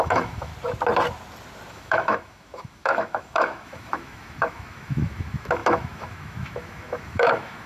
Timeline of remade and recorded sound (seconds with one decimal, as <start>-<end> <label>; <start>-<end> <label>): 0.0-0.5 remade; 0.5-1.7 recorded; 1.7-7.7 remade